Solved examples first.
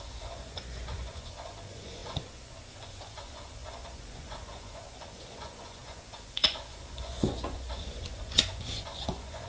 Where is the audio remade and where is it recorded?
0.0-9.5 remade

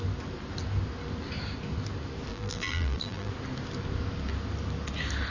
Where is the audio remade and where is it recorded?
0.0-2.3 recorded; 2.3-3.3 remade; 3.3-5.3 recorded

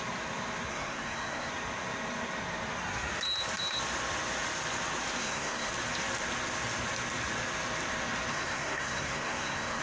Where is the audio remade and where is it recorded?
0.0-0.7 recorded; 0.7-1.5 remade; 1.5-5.2 recorded; 5.2-5.7 remade; 5.7-8.3 recorded; 8.3-9.8 remade

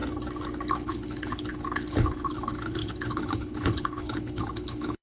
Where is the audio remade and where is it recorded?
0.0-0.7 recorded; 0.7-5.0 remade

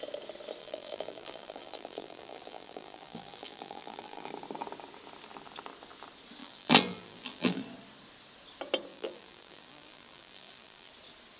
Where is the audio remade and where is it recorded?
0.0-0.6 recorded; 0.6-4.3 remade; 4.3-6.4 recorded; 6.4-7.6 remade; 7.6-8.9 recorded; 8.9-10.9 remade; 10.9-11.4 recorded

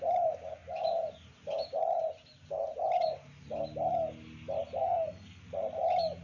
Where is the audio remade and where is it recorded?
0.0-4.8 recorded; 4.8-5.4 remade; 5.4-6.2 recorded